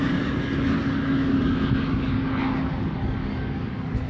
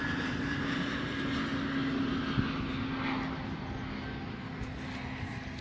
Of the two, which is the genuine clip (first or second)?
second